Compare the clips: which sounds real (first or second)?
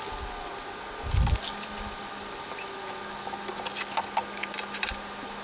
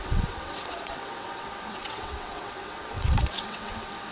first